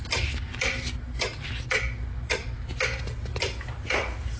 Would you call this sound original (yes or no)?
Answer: yes